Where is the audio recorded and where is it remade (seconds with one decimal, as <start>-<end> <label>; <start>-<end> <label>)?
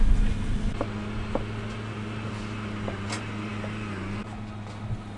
0.0-5.2 recorded